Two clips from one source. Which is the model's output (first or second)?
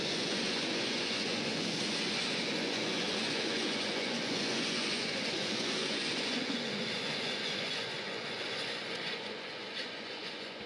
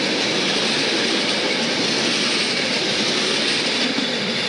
first